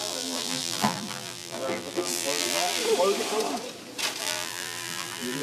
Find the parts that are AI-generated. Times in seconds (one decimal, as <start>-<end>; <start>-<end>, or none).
0.0-2.8; 4.2-5.4